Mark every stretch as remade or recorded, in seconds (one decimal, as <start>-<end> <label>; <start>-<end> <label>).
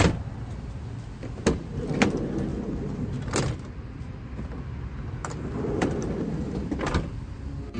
0.0-2.5 recorded; 2.5-3.0 remade; 3.0-7.8 recorded